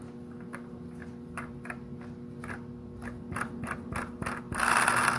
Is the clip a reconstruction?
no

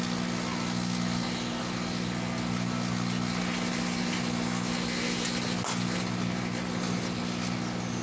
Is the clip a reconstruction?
no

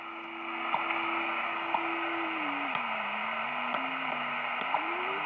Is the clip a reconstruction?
no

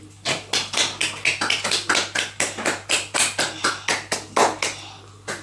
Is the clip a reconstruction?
no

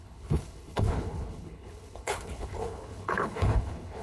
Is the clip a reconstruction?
yes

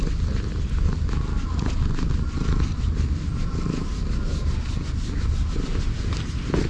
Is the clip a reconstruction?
no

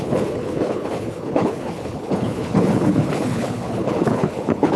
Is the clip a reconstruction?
yes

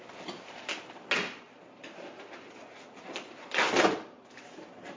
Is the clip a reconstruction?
no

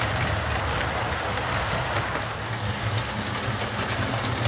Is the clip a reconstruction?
no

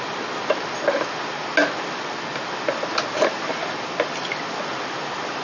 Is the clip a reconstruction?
no